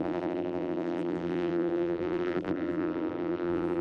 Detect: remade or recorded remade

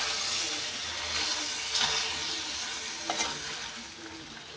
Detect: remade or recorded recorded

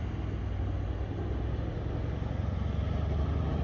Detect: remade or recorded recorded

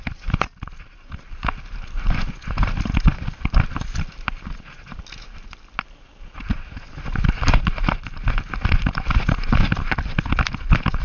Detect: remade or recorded recorded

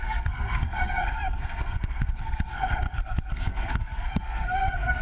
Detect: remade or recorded remade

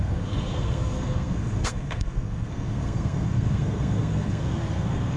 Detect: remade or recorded remade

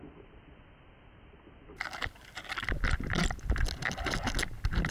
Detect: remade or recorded recorded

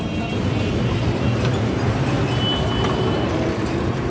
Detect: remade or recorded recorded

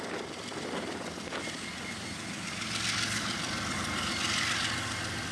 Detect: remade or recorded remade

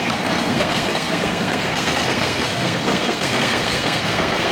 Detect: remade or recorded remade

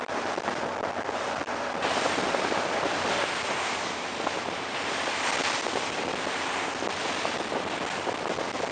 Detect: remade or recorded remade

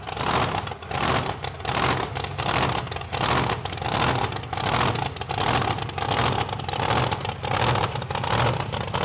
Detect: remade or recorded recorded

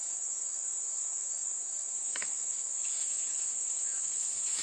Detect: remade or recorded remade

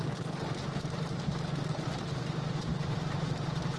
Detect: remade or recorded remade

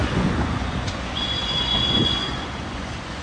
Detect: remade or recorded remade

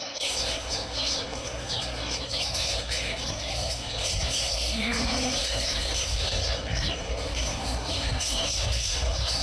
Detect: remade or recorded remade